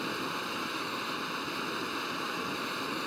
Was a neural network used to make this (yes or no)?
no